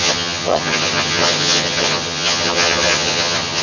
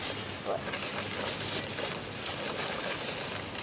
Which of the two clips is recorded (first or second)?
second